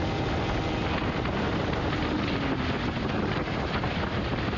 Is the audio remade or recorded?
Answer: recorded